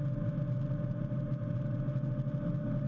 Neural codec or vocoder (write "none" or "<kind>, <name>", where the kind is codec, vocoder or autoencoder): none